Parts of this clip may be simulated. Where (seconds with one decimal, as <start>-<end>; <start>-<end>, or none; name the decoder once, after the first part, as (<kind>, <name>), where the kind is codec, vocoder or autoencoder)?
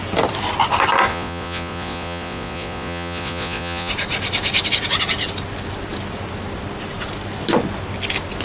1.1-3.9 (vocoder, Vocos)